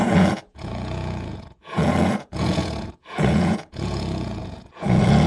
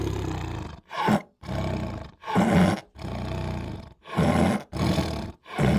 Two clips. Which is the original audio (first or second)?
second